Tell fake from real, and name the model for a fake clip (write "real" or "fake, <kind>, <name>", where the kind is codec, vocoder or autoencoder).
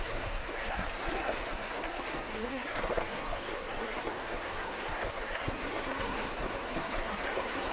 fake, codec, SNAC